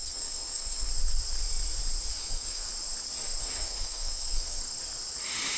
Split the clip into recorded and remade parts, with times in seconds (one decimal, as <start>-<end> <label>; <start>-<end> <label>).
0.0-0.9 remade; 0.9-2.1 recorded; 2.1-2.7 remade; 2.7-3.4 recorded; 3.4-4.6 remade; 4.6-5.6 recorded